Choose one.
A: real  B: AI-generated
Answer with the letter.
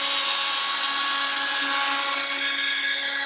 A